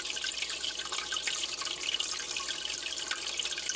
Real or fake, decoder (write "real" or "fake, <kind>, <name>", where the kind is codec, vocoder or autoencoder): real